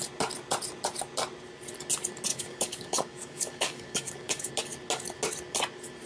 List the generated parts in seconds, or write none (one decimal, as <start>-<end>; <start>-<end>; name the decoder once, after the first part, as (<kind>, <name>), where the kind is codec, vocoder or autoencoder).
2.3-4.5 (codec, DAC)